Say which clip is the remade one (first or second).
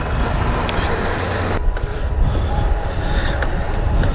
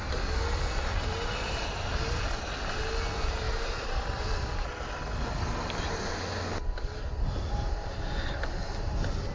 first